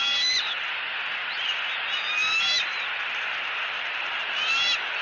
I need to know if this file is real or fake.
real